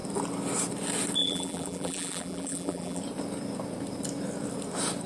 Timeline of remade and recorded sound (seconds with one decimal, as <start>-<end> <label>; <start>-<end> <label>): 0.0-1.2 recorded; 1.2-3.0 remade; 3.0-5.1 recorded